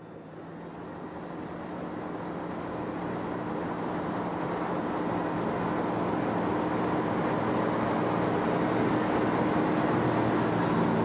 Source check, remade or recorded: recorded